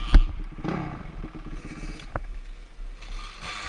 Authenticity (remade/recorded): recorded